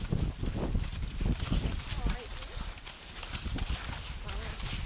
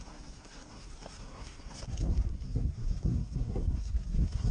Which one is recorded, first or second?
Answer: first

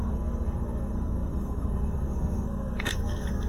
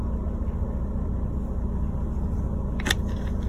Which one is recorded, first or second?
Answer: second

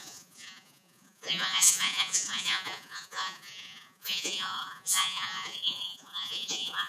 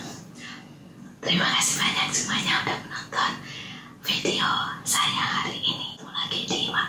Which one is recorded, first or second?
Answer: second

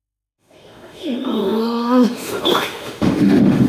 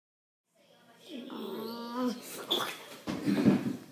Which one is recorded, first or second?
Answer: second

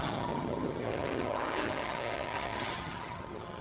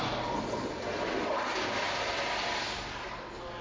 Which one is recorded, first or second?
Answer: second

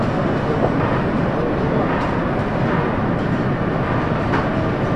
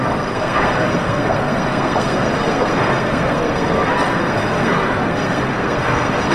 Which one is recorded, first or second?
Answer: first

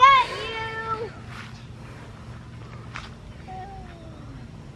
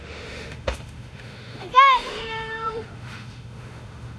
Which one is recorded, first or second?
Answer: first